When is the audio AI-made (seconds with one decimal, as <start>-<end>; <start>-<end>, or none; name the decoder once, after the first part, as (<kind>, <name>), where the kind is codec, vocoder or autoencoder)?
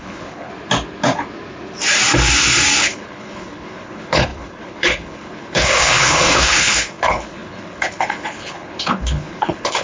0.0-0.5 (codec, HILCodec); 2.8-9.8